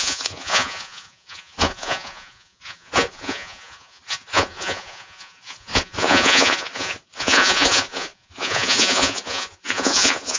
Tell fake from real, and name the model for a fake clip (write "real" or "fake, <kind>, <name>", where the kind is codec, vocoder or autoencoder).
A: fake, vocoder, Vocos